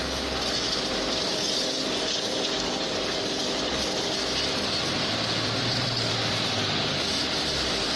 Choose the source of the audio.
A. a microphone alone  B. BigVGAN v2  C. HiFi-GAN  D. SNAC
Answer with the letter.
B